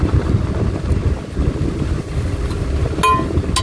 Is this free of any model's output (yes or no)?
yes